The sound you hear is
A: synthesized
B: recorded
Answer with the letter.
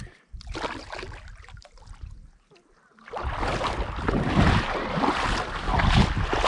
B